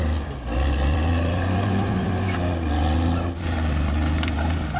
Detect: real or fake real